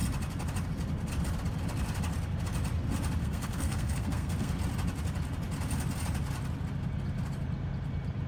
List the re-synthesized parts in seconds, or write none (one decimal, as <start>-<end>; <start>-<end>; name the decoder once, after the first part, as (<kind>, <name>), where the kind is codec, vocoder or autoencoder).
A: 3.2-4.5 (codec, SNAC)